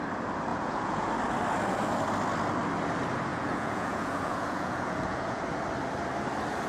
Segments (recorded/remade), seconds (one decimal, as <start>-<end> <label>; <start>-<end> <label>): 0.0-0.5 recorded; 0.5-1.1 remade; 1.1-3.3 recorded; 3.3-5.4 remade; 5.4-6.7 recorded